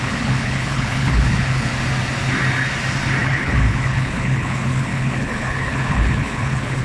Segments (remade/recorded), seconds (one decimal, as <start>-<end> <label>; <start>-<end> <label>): 0.0-1.7 remade; 1.7-3.2 recorded; 3.2-6.8 remade